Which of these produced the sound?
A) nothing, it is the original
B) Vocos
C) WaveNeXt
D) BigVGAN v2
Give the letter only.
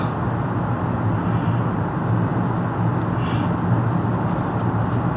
A